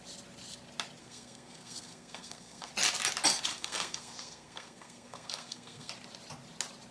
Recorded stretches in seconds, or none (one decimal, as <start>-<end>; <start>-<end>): 0.0-1.0; 2.7-3.5; 5.9-6.9